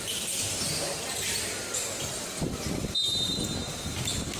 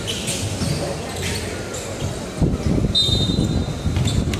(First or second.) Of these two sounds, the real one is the second